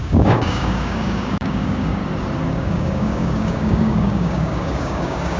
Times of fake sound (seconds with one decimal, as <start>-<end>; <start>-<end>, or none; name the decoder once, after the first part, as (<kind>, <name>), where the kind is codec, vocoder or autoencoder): 0.0-2.0 (codec, DAC); 2.5-5.4